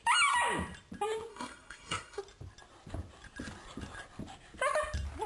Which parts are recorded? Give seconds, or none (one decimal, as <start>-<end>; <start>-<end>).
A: 0.0-1.3; 2.2-5.3